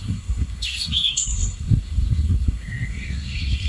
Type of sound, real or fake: fake